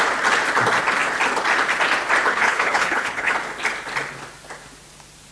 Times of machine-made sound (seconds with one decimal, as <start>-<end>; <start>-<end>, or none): 2.3-3.3